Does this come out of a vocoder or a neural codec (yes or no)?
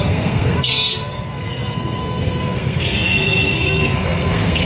yes